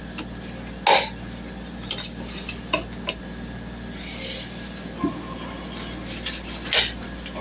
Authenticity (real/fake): real